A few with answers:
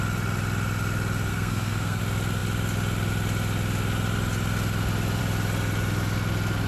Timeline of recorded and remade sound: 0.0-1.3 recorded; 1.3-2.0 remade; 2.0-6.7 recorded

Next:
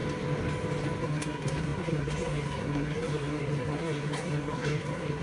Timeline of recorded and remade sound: 0.0-1.0 recorded; 1.0-5.2 remade

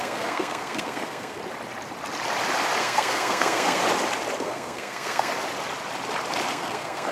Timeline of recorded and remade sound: 0.0-1.4 remade; 1.4-2.8 recorded; 2.8-3.8 remade; 3.8-4.4 recorded; 4.4-5.3 remade; 5.3-6.5 recorded; 6.5-7.1 remade